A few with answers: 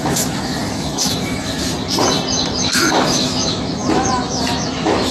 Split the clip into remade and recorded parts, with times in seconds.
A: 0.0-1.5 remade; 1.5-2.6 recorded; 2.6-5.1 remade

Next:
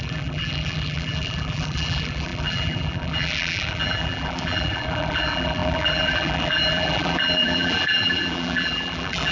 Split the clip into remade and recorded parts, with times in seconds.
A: 0.0-9.3 remade

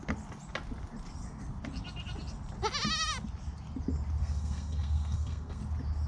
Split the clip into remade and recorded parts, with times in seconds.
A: 0.0-4.2 recorded; 4.2-5.6 remade; 5.6-6.1 recorded

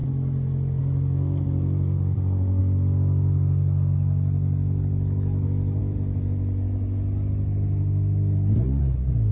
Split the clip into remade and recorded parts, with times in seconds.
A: 0.0-9.3 recorded

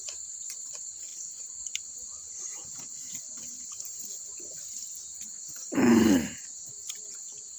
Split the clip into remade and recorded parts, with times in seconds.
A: 0.0-5.9 remade; 5.9-7.6 recorded

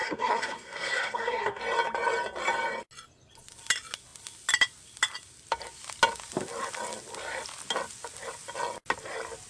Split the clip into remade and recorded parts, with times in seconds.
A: 0.0-1.6 remade; 1.6-9.5 recorded

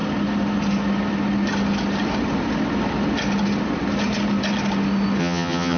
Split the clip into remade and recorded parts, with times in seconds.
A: 0.0-5.2 recorded; 5.2-5.8 remade

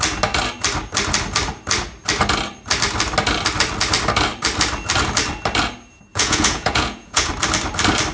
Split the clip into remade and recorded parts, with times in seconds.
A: 0.0-6.1 recorded; 6.1-7.3 remade; 7.3-8.1 recorded